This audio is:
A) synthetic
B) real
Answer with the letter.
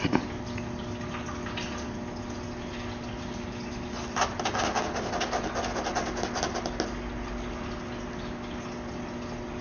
B